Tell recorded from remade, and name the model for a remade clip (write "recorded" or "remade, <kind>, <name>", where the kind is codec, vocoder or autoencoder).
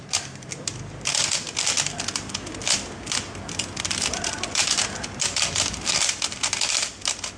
recorded